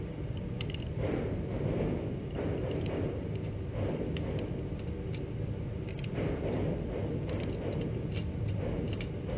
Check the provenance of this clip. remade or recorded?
recorded